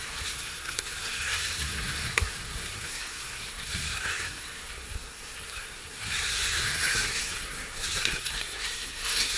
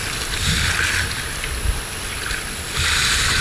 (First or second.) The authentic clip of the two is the second